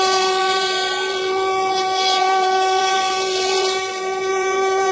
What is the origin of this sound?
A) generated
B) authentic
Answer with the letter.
A